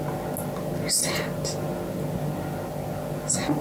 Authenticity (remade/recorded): recorded